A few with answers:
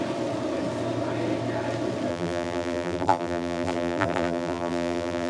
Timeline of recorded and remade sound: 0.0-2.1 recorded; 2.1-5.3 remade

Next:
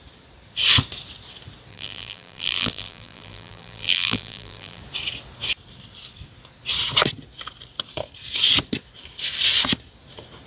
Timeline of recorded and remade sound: 0.0-1.7 recorded; 1.7-4.8 remade; 4.8-10.5 recorded

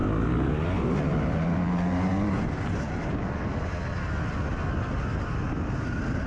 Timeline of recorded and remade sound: 0.0-6.3 recorded

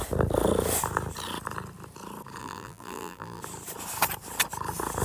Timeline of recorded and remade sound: 0.0-2.4 recorded; 2.4-3.4 remade; 3.4-5.0 recorded

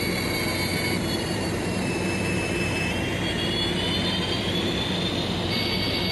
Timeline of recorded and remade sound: 0.0-0.7 recorded; 0.7-2.9 remade; 2.9-4.0 recorded; 4.0-4.7 remade; 4.7-6.1 recorded